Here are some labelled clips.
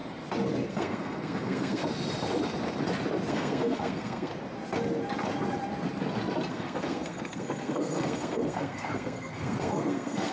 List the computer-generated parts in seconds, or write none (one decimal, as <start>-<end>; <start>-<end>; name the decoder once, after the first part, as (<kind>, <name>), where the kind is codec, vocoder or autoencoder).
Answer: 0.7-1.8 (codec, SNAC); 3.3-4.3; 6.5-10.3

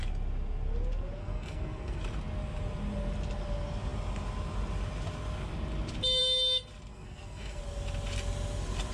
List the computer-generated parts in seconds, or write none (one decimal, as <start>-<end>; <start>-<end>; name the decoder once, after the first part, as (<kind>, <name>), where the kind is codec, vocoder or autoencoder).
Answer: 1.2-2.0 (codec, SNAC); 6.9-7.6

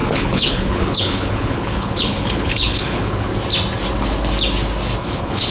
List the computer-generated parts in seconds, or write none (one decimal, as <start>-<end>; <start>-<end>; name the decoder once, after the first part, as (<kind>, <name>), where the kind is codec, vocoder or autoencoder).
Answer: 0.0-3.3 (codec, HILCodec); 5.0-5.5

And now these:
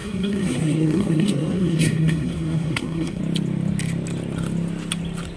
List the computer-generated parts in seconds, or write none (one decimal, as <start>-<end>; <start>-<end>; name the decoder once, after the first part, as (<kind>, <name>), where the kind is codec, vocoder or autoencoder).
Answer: 0.0-3.2 (codec, SNAC)

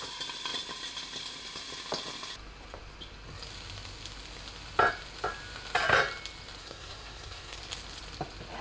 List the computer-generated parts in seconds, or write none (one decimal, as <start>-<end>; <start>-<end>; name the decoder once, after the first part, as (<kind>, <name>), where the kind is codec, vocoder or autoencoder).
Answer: 6.6-7.6 (codec, SNAC)

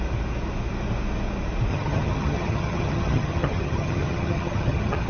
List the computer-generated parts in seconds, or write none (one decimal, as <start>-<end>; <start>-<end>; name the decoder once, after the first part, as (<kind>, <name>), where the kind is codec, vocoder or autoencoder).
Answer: 1.7-5.1 (vocoder, HiFi-GAN)